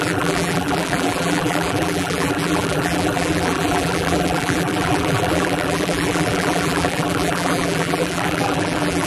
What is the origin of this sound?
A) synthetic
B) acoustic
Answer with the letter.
A